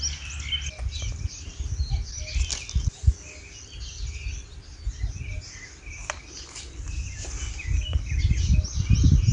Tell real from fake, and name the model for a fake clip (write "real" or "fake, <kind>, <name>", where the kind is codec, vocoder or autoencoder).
real